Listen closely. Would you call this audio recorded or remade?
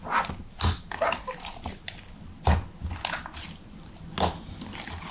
recorded